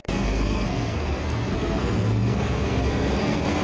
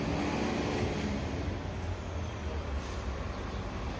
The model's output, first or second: first